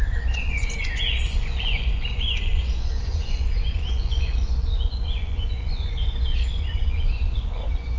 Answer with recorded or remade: remade